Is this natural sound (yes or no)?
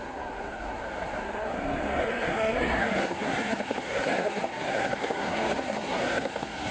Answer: no